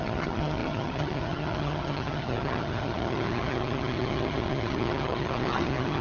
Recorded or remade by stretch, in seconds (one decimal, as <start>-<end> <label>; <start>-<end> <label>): 0.0-6.0 remade